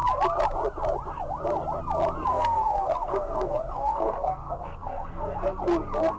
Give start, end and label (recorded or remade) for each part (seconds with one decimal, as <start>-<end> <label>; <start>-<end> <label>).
0.0-2.3 recorded; 2.3-5.6 remade; 5.6-6.2 recorded